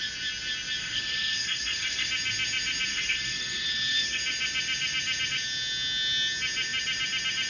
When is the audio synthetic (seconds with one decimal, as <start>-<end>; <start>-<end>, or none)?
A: 0.8-2.1; 2.9-4.2